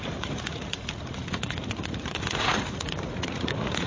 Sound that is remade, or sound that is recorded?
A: remade